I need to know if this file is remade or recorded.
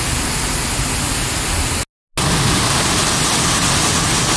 recorded